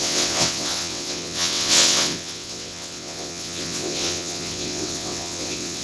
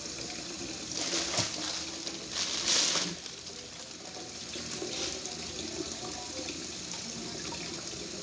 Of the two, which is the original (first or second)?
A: second